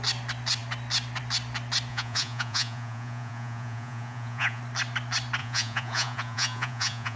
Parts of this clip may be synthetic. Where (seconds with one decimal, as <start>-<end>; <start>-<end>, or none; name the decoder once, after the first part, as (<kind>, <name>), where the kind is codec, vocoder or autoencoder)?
1.9-4.6 (vocoder, Vocos); 5.4-7.2

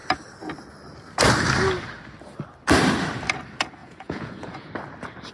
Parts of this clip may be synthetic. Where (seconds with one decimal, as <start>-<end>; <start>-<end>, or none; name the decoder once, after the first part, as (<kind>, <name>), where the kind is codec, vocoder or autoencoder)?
3.8-4.7 (vocoder, Vocos)

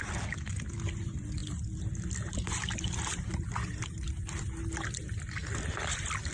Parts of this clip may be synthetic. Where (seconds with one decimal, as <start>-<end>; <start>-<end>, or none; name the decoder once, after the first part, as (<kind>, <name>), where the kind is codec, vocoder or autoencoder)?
none

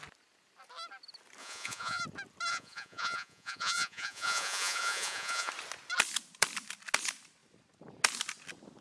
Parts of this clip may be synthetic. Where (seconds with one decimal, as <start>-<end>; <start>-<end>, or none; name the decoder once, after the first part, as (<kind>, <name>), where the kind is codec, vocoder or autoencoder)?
1.4-2.0 (vocoder, Vocos); 2.5-5.5

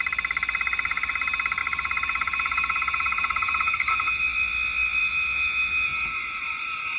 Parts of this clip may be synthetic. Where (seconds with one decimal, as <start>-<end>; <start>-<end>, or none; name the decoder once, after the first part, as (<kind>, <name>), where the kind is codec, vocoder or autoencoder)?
1.6-4.2 (vocoder, Vocos); 5.0-6.4

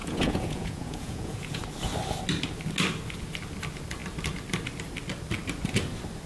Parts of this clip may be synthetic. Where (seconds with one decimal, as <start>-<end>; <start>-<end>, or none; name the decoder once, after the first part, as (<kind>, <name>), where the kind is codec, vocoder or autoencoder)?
0.0-1.6 (vocoder, Vocos)